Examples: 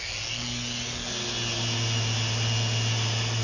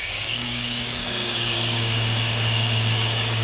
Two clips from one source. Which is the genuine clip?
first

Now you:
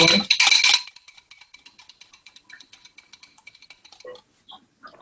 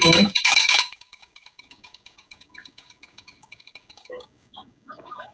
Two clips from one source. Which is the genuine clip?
first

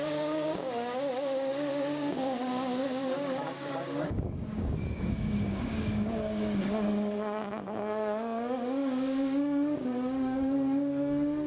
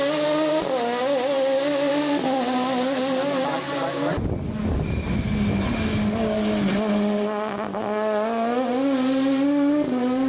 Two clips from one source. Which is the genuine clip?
second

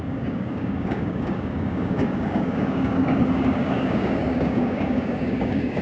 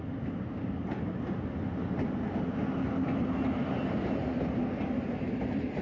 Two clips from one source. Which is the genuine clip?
second